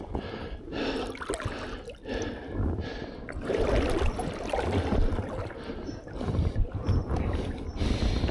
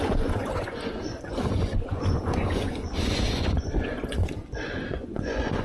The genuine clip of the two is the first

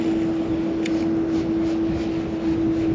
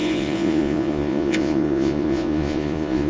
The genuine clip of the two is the first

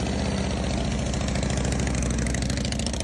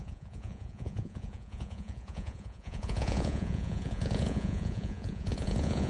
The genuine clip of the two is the first